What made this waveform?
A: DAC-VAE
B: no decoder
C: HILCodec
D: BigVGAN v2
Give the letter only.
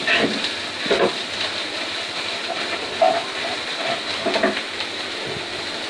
B